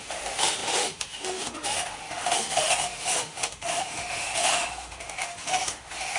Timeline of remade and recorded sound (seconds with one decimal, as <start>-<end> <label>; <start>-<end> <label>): 0.0-6.2 remade